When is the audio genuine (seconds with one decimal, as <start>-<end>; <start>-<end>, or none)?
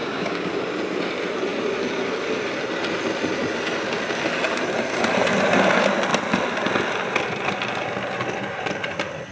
0.5-9.3